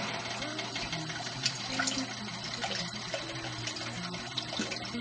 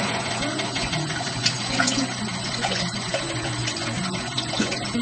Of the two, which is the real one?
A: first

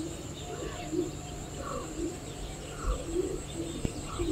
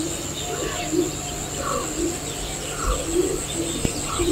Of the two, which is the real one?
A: second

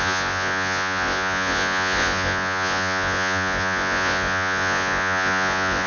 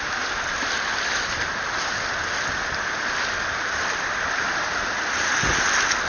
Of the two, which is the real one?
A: second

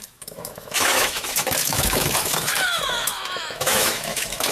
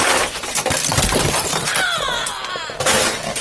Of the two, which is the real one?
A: second